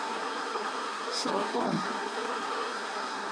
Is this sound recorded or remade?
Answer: remade